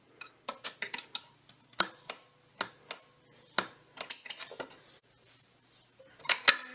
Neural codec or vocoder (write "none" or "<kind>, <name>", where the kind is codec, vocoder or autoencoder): none